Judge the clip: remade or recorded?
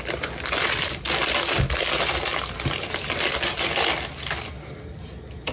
recorded